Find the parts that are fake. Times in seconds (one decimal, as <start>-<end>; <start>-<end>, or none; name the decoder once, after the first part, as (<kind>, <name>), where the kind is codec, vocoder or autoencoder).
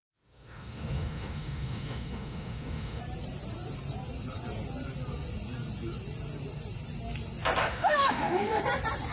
0.0-3.0 (autoencoder, DAC-VAE); 7.6-8.6